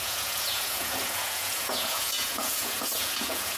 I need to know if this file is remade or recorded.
remade